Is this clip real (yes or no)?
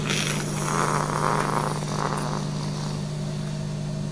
yes